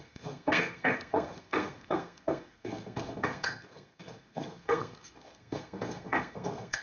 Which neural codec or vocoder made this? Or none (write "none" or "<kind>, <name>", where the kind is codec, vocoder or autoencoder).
codec, SNAC